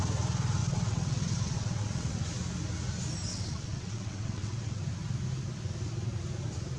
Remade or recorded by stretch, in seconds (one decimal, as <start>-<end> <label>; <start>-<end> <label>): 0.0-0.6 recorded; 0.6-2.2 remade; 2.2-3.3 recorded; 3.3-4.8 remade; 4.8-6.8 recorded